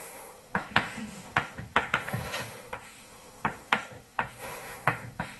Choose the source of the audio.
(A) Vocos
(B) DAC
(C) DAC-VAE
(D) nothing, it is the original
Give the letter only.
C